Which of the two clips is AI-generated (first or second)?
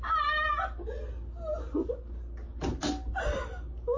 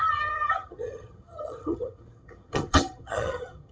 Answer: second